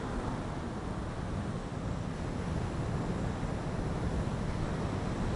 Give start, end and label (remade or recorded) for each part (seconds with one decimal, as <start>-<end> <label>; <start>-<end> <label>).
0.0-5.4 recorded